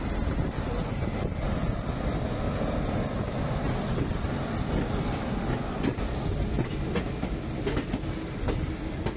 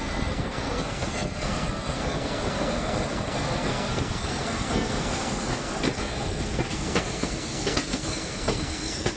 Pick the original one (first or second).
first